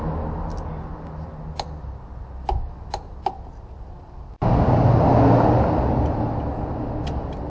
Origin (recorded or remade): recorded